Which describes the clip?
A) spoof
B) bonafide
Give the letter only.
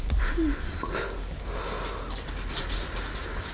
B